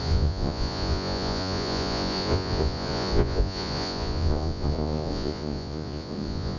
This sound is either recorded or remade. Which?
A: remade